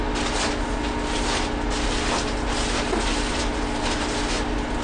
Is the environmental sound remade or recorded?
recorded